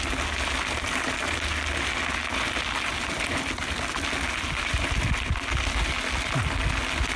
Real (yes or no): yes